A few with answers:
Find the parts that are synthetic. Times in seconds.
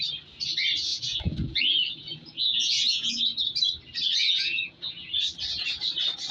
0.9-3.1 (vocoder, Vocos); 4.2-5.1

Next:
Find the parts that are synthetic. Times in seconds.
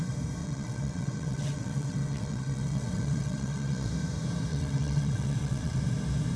0.4-3.9 (vocoder, WaveNeXt); 4.5-5.8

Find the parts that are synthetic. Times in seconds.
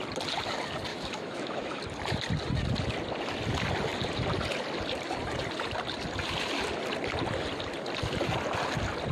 0.9-1.8 (autoencoder, DAC-VAE)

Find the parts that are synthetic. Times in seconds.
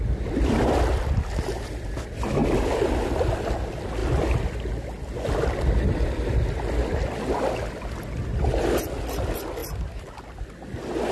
none